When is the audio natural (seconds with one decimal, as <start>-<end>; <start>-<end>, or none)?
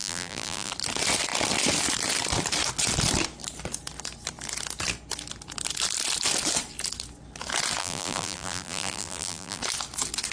0.7-7.8; 9.6-10.3